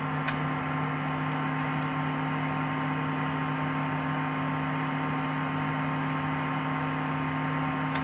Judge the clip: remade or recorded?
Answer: recorded